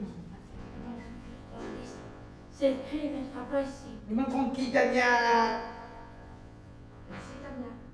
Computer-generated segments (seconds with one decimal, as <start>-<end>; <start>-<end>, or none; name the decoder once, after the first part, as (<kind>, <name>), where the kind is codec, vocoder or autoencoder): 0.6-4.0 (vocoder, Vocos); 4.6-7.9